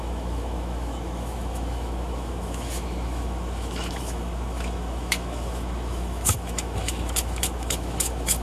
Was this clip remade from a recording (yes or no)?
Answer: yes